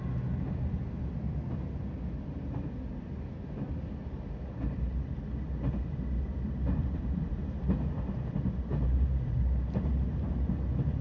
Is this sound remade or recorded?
recorded